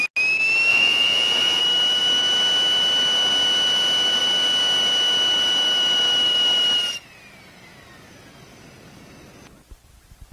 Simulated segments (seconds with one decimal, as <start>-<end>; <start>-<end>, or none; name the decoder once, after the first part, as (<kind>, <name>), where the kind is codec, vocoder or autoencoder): 0.7-1.6 (vocoder, Vocos)